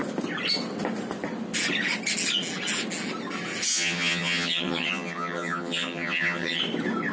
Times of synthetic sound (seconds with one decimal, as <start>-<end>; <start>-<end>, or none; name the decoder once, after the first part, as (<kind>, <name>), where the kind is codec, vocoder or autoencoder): 3.7-6.6 (vocoder, HiFi-GAN)